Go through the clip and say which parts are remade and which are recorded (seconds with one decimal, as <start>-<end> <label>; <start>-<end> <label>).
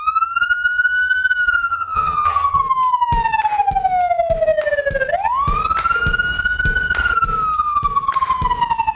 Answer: 0.0-1.7 recorded; 1.7-2.6 remade; 2.6-9.0 recorded